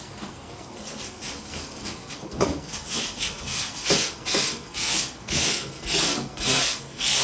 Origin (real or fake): fake